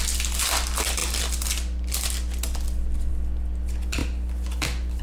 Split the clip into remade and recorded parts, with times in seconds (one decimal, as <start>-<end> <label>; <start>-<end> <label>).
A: 0.0-5.0 recorded